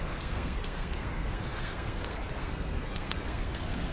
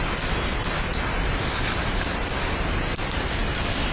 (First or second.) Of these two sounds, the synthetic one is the first